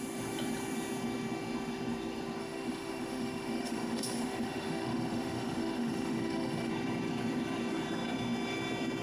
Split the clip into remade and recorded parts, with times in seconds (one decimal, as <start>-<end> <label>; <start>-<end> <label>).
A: 0.0-2.4 recorded; 2.4-6.7 remade; 6.7-9.0 recorded